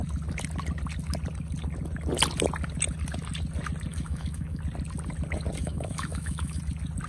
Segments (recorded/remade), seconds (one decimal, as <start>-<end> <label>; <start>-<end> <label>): 0.0-3.9 recorded; 3.9-4.6 remade; 4.6-5.6 recorded; 5.6-6.6 remade; 6.6-7.1 recorded